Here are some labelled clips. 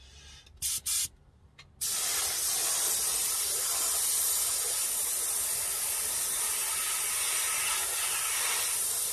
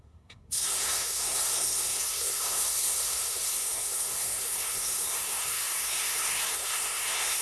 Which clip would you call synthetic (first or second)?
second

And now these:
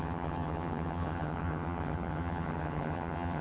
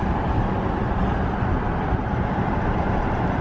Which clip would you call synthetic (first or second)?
first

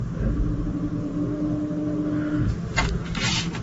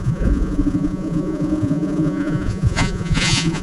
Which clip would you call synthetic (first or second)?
second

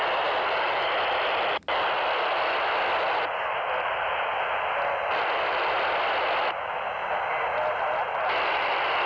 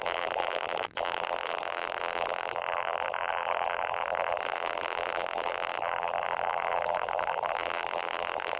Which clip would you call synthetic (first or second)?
second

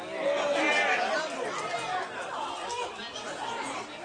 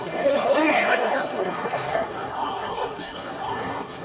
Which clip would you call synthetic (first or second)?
second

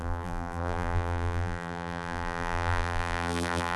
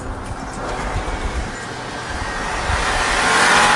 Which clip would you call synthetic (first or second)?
first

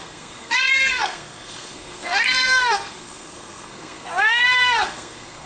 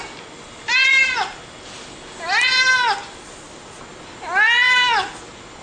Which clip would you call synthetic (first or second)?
first